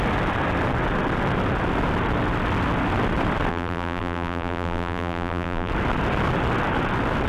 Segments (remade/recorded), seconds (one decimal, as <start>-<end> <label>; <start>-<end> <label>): 0.0-3.5 recorded; 3.5-5.7 remade; 5.7-7.3 recorded